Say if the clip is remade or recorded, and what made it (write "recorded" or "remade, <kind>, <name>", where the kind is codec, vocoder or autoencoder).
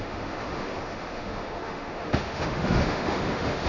remade, autoencoder, DAC-VAE